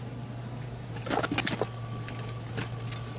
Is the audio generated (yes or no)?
no